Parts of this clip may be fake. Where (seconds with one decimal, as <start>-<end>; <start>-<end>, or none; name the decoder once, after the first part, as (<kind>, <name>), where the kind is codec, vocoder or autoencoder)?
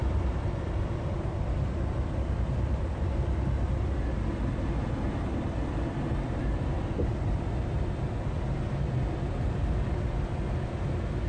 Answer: 0.0-3.1 (vocoder, BigVGAN v2)